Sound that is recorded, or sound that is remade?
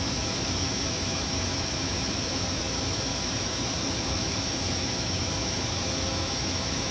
remade